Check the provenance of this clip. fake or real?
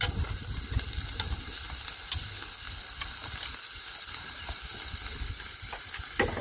real